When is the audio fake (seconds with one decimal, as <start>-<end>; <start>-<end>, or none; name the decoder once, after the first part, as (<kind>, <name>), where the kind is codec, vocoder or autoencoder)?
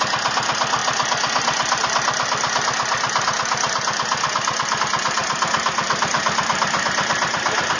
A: 5.2-6.4 (vocoder, BigVGAN v2)